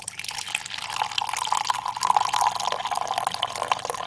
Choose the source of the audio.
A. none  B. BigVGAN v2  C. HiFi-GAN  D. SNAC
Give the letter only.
A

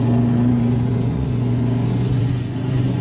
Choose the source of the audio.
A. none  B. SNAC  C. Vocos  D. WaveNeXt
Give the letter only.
C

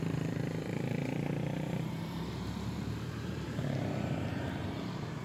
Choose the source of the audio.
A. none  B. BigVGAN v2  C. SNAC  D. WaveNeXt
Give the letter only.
B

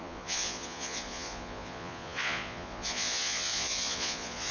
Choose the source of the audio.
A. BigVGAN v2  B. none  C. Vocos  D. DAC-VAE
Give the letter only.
C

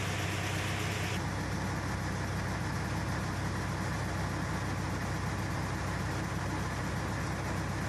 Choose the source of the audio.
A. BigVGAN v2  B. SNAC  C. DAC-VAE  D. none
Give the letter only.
D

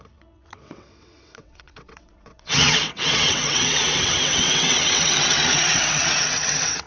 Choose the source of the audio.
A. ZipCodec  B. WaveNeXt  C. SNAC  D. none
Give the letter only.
B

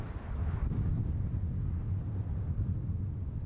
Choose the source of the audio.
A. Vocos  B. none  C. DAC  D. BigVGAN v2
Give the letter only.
B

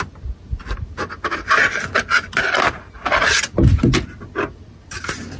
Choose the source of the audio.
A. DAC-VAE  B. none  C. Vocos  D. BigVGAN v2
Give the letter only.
B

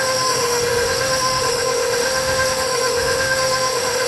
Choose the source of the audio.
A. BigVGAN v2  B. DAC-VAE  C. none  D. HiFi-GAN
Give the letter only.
B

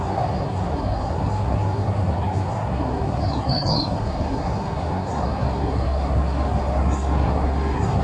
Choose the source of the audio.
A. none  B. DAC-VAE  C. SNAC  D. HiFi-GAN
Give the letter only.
C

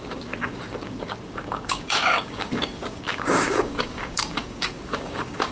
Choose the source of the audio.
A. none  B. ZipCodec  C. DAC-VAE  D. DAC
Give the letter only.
D